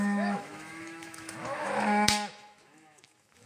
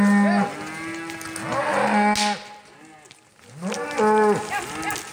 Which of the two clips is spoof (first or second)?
first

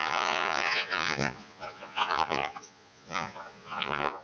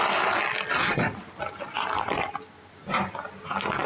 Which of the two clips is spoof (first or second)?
first